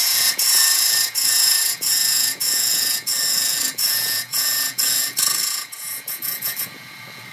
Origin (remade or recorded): remade